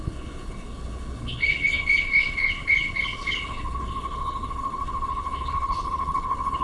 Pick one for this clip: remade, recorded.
remade